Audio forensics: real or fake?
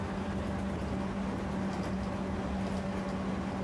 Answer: real